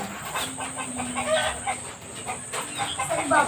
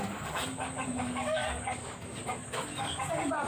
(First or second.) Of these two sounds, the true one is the first